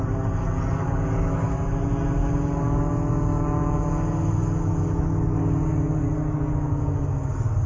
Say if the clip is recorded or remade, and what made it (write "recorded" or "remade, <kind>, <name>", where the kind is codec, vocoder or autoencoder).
recorded